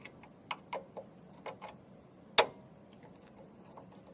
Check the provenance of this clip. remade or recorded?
recorded